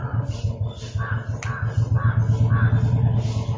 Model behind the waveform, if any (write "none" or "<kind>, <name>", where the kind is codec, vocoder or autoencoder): none